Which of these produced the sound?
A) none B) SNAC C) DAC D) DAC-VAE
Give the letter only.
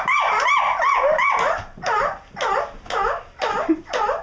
A